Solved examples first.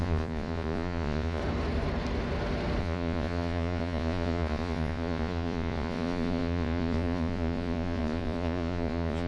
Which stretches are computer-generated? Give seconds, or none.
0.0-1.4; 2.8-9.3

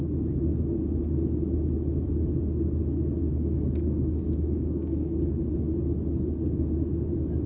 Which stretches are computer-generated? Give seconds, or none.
3.2-5.5

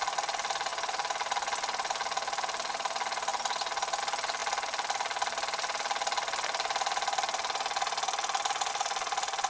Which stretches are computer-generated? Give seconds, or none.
0.0-0.7; 2.7-3.3; 4.0-9.5